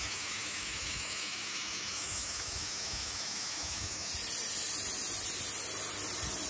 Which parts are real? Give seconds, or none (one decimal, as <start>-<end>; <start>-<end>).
4.1-6.5